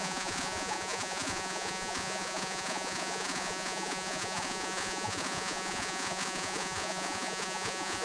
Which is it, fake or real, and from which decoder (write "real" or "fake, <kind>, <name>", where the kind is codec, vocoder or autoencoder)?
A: fake, vocoder, Vocos